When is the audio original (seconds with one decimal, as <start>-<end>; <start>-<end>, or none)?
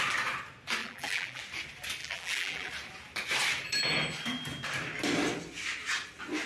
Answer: 0.0-0.8; 1.4-2.0; 2.7-6.5